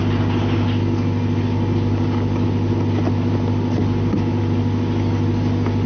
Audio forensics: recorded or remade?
recorded